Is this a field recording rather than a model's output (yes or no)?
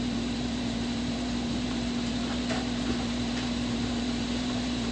no